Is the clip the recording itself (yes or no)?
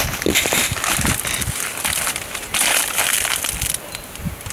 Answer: yes